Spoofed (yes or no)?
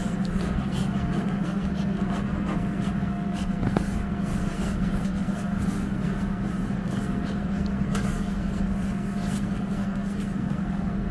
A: yes